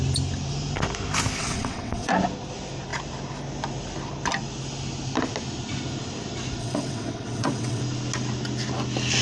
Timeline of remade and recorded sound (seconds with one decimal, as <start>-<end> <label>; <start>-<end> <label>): 0.0-1.4 recorded; 1.4-2.1 remade; 2.1-6.6 recorded; 6.6-7.8 remade; 7.8-9.2 recorded